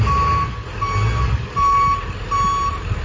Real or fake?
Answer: real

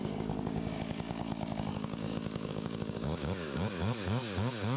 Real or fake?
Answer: fake